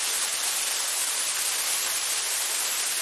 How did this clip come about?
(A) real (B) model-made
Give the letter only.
A